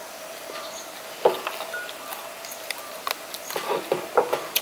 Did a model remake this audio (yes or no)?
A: no